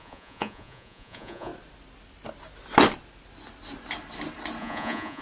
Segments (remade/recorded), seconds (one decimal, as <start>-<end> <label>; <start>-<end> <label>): 0.0-1.5 remade; 1.5-4.6 recorded; 4.6-5.2 remade